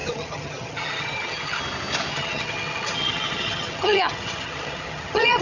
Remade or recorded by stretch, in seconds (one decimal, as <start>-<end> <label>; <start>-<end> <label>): 0.0-1.6 remade; 1.6-2.1 recorded; 2.1-5.4 remade